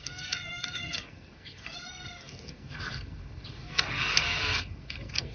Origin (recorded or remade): remade